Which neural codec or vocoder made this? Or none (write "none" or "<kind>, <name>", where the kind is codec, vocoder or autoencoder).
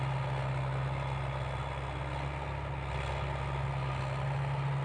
none